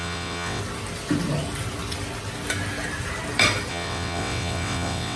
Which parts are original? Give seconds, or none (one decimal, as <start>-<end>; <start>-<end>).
0.6-3.7